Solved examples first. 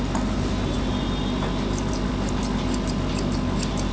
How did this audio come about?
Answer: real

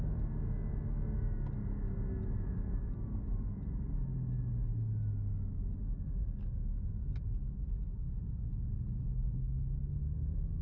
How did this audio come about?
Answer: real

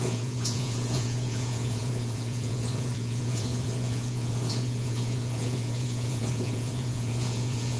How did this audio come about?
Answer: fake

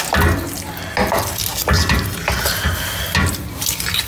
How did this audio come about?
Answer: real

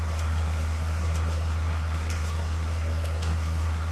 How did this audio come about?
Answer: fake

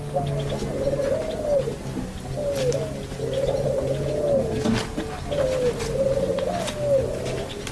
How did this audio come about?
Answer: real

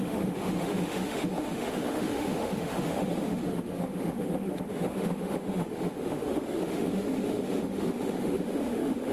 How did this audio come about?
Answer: fake